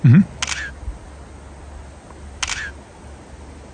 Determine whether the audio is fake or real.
real